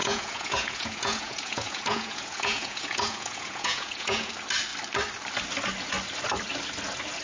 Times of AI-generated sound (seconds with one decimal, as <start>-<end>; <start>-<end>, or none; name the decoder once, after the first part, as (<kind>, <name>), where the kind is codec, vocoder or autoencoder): 0.0-4.3 (vocoder, Vocos)